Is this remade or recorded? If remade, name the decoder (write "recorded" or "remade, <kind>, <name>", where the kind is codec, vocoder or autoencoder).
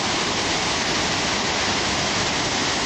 recorded